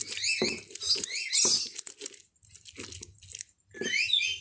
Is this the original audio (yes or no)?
yes